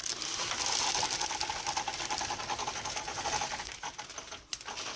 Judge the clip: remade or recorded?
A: recorded